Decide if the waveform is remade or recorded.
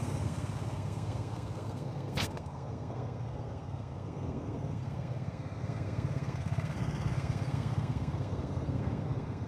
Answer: remade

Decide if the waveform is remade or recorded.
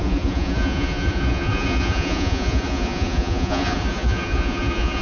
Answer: remade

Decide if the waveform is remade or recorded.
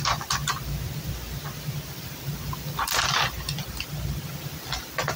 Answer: recorded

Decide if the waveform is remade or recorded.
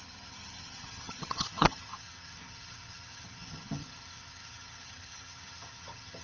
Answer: remade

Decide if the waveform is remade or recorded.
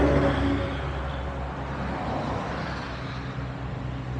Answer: recorded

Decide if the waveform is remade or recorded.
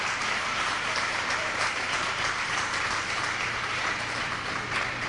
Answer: remade